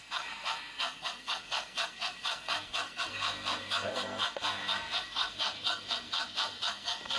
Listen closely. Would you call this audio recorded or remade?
remade